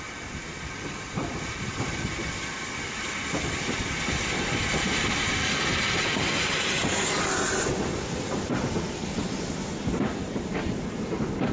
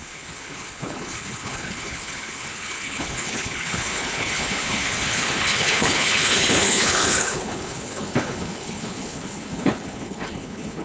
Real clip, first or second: first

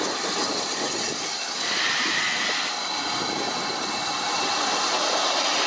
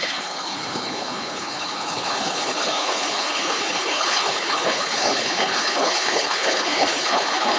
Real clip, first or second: first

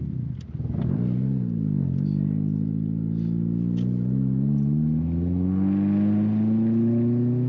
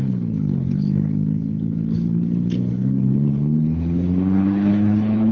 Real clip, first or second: first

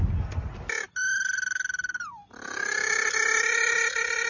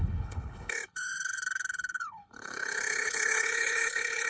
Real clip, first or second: first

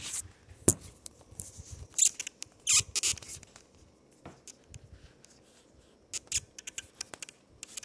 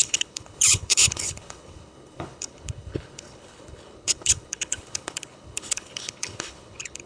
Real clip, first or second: first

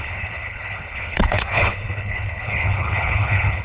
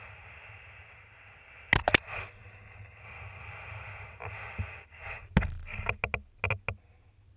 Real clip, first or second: second